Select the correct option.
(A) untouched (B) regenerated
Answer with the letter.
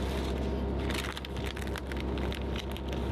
A